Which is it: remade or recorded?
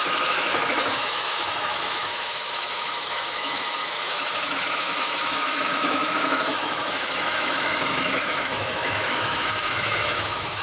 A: remade